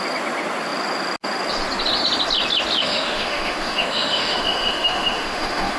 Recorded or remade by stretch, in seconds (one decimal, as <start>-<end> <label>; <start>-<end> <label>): 0.0-2.8 recorded; 2.8-5.8 remade